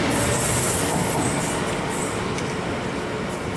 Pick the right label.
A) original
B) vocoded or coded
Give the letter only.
A